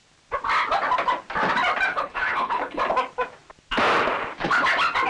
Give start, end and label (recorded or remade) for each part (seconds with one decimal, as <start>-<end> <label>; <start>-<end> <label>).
0.0-1.9 recorded; 1.9-2.8 remade; 2.8-5.1 recorded